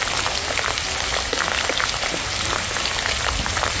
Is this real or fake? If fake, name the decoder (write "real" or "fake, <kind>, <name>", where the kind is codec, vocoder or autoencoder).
real